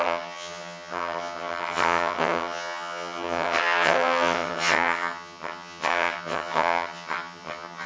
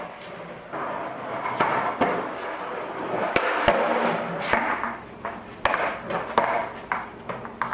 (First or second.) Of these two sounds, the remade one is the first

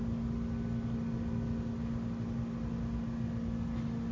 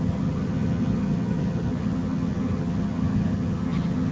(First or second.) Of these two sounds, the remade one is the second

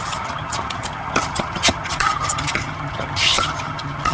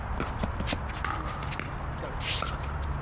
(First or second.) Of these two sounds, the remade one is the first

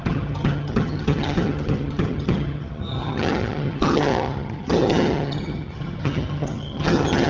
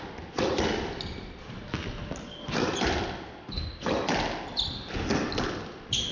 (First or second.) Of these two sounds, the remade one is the first